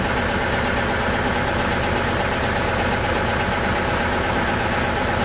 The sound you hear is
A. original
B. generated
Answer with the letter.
A